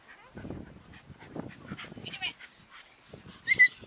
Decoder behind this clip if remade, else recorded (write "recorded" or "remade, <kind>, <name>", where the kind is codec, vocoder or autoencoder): recorded